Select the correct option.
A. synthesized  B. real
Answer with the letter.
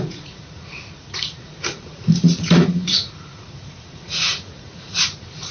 A